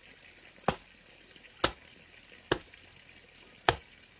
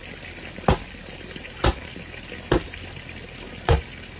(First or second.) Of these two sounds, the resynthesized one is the second